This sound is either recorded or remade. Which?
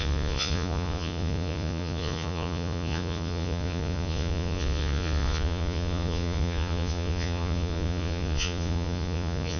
remade